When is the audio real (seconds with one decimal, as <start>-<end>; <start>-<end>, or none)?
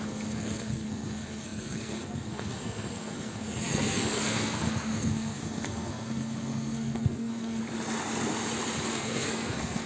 7.6-8.9